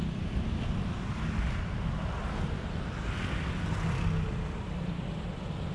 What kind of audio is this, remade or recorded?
recorded